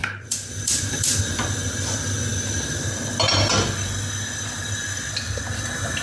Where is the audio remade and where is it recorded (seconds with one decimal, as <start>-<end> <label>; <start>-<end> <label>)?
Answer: 0.0-1.2 remade; 1.2-6.0 recorded